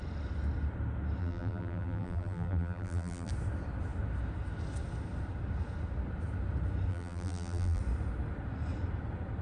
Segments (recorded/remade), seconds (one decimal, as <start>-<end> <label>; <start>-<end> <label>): 0.0-1.2 recorded; 1.2-3.3 remade; 3.3-6.9 recorded; 6.9-7.8 remade; 7.8-9.4 recorded